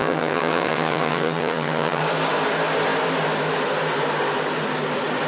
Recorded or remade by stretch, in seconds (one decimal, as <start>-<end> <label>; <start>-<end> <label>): 0.0-2.0 remade; 2.0-5.3 recorded